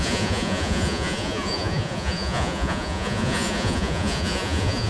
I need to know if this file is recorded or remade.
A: remade